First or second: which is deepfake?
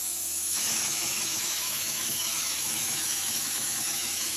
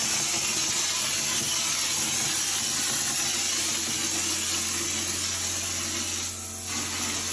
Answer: first